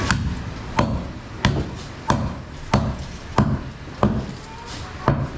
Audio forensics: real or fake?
real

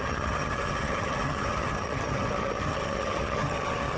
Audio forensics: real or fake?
fake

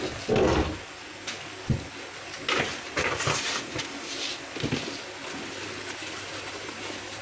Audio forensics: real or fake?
real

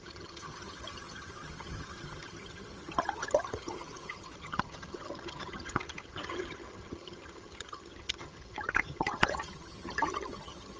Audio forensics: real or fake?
fake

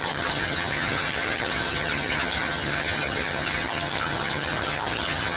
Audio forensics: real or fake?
fake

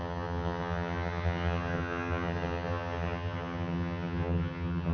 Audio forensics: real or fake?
fake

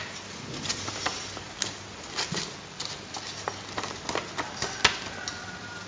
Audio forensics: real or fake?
real